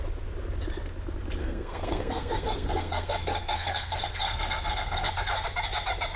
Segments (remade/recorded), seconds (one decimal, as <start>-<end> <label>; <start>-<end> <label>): 0.0-1.4 recorded; 1.4-5.1 remade; 5.1-6.2 recorded